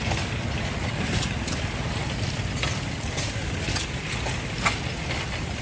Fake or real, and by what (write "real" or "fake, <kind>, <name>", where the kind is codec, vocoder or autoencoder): real